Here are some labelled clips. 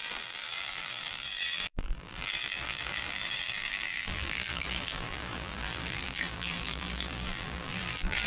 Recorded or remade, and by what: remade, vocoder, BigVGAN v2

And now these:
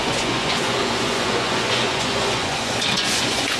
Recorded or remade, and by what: remade, vocoder, Vocos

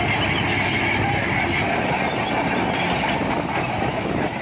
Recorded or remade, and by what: recorded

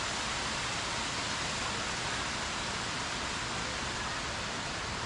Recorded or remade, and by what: recorded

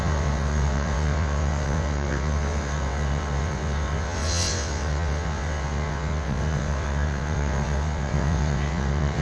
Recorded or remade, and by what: remade, vocoder, WaveNeXt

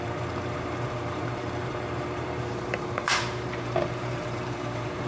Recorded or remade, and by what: remade, vocoder, BigVGAN v2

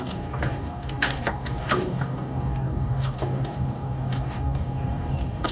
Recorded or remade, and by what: remade, codec, DAC